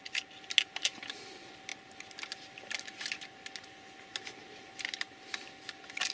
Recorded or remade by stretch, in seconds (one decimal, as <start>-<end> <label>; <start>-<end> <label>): 0.0-6.1 recorded